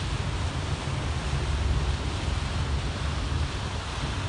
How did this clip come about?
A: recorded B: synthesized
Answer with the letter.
A